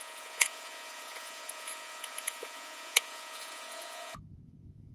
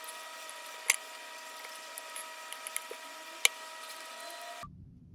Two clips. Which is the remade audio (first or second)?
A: first